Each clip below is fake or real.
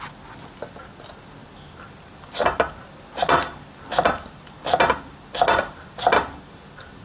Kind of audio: real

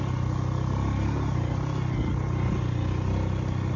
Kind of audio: real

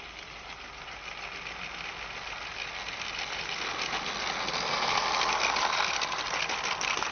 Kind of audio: real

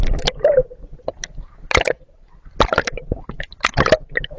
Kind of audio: real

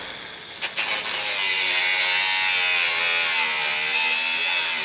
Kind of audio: real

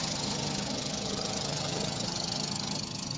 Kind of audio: fake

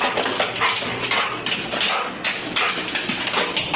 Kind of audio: real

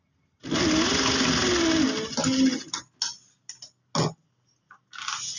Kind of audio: real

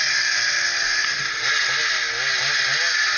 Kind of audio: real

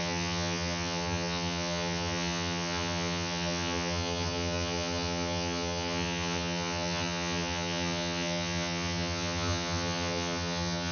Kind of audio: fake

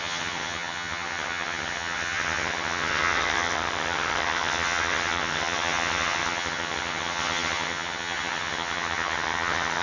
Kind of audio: fake